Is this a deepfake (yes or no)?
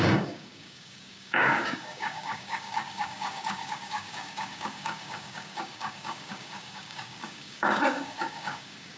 yes